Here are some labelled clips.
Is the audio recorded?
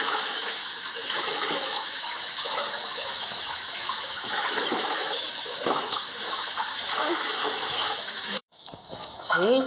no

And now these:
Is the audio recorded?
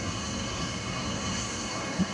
no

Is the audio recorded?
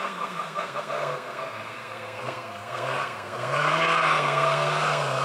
no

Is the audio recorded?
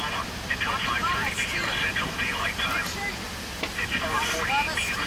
yes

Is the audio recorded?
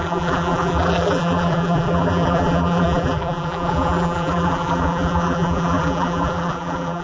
no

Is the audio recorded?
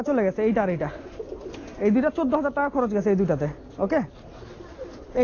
yes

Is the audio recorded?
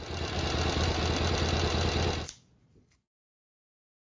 yes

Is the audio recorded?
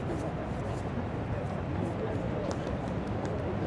yes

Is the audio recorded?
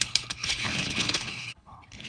no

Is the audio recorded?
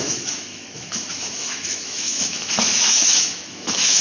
no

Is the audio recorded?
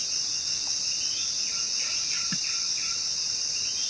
yes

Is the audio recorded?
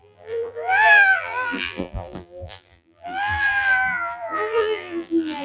no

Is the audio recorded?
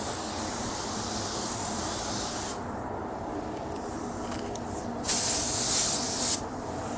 yes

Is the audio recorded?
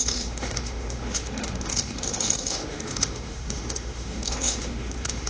no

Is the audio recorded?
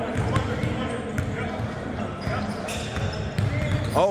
yes